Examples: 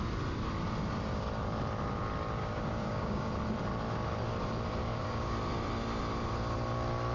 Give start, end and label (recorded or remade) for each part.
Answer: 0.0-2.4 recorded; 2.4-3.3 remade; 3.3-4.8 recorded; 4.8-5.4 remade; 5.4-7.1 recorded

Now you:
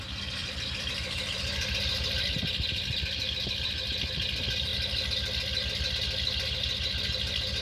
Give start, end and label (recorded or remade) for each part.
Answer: 0.0-0.4 recorded; 0.4-1.7 remade; 1.7-7.6 recorded